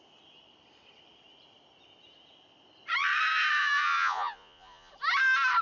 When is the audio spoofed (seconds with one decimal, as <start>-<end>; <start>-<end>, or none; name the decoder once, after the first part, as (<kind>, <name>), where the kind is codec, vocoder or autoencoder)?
3.6-4.9 (vocoder, Vocos)